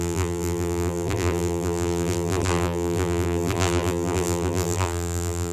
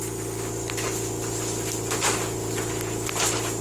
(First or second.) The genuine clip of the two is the second